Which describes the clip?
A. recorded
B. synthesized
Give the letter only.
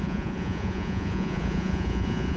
B